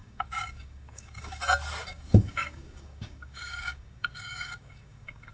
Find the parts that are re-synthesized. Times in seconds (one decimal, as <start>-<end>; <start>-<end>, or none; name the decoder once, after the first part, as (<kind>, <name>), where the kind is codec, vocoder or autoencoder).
0.0-1.4 (codec, DAC); 1.9-5.3